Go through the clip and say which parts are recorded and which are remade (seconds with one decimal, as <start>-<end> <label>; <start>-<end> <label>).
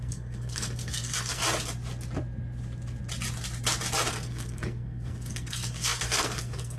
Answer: 0.0-1.4 remade; 1.4-4.1 recorded; 4.1-6.8 remade